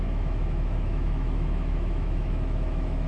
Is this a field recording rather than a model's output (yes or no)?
no